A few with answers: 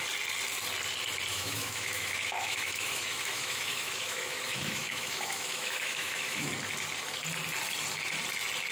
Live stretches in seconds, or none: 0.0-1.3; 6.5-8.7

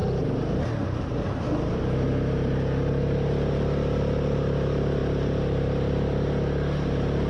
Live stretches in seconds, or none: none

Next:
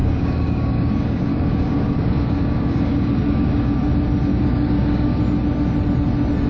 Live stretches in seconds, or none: 3.9-4.3; 5.2-6.5

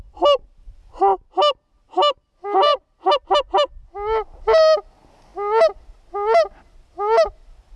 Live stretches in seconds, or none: 0.0-7.8